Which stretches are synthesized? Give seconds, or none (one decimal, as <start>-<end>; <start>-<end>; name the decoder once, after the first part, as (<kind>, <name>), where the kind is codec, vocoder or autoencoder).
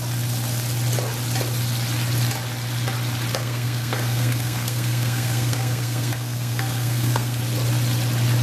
3.3-7.4 (codec, SNAC)